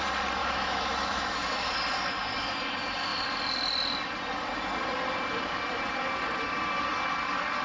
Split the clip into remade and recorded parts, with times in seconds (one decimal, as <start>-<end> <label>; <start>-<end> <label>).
0.0-0.4 recorded; 0.4-1.7 remade; 1.7-7.6 recorded